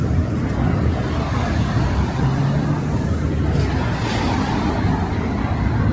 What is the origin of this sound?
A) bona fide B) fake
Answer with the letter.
A